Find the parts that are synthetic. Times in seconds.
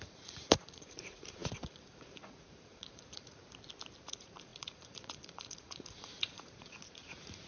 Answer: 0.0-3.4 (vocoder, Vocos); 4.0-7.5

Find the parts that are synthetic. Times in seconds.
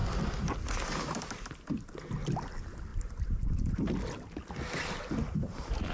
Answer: none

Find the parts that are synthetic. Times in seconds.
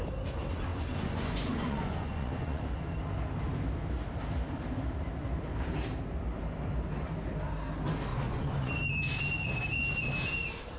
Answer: 0.7-2.6 (vocoder, Vocos); 8.1-8.7